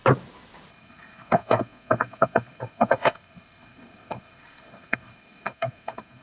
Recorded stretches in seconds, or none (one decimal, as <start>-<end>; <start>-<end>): 0.0-0.7